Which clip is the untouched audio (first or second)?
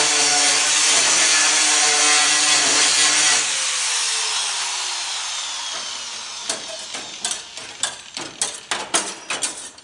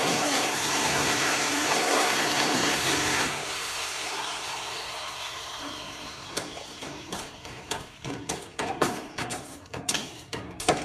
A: first